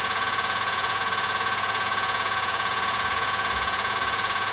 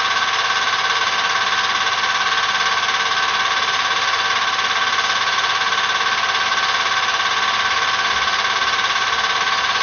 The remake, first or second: first